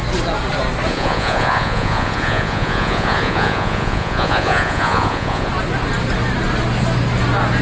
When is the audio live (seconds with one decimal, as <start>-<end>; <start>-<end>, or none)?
0.0-0.9; 5.5-7.6